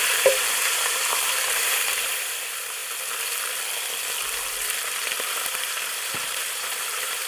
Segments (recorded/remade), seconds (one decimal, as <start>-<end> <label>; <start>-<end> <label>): 0.0-2.8 remade; 2.8-5.3 recorded; 5.3-7.3 remade